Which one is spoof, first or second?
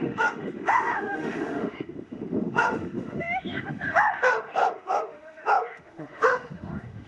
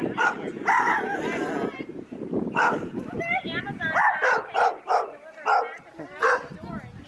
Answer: first